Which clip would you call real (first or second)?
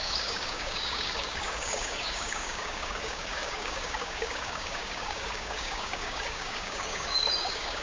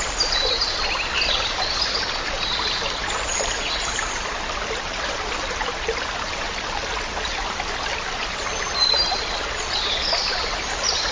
second